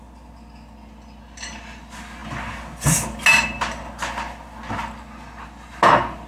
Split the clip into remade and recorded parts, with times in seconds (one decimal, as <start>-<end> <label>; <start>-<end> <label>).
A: 0.0-6.3 recorded